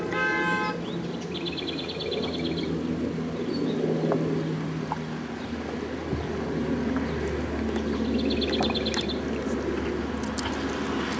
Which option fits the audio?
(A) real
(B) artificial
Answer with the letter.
A